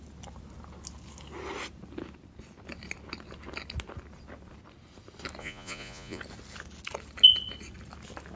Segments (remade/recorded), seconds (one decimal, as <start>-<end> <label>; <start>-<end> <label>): 0.0-5.4 recorded; 5.4-6.2 remade; 6.2-8.4 recorded